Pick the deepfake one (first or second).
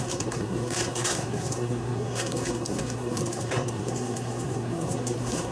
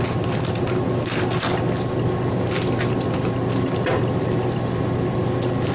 first